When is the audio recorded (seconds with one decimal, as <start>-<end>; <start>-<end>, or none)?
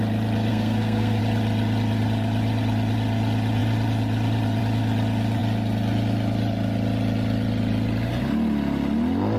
0.0-0.5; 1.2-9.4